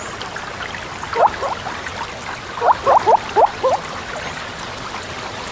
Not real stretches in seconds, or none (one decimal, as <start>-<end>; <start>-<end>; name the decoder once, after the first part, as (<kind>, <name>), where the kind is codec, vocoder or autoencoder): none